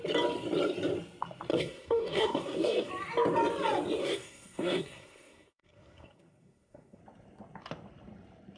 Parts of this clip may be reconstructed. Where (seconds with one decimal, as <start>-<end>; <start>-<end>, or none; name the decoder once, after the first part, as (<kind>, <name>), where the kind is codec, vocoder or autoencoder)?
1.5-2.9 (codec, SNAC); 4.0-7.0